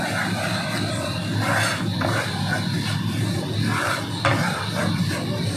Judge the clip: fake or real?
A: real